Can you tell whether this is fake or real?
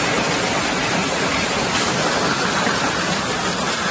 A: real